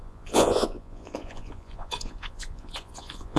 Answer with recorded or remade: remade